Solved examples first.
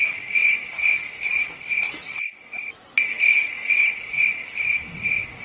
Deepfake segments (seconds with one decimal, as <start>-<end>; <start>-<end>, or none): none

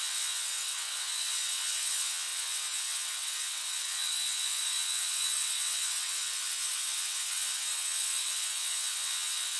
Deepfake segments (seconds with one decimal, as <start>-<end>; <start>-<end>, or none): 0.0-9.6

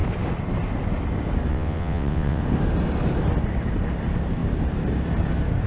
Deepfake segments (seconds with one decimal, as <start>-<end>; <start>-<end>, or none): 1.5-2.4

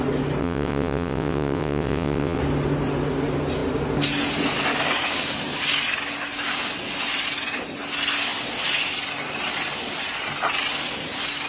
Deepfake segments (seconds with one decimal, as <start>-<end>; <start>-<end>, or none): 0.4-2.4

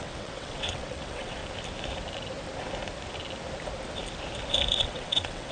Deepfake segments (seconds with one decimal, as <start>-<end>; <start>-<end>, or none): 0.0-1.4; 4.7-5.5